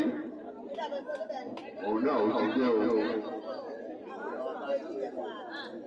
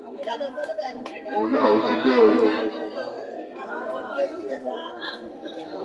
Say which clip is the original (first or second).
first